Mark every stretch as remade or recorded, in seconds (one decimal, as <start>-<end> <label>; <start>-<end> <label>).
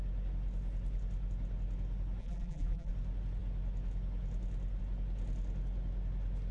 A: 0.0-2.2 recorded; 2.2-2.9 remade; 2.9-6.5 recorded